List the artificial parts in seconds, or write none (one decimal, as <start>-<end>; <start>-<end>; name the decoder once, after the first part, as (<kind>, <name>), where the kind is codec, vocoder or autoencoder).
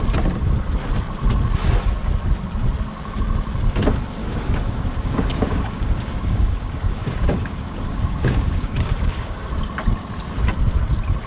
4.2-9.5 (codec, DAC)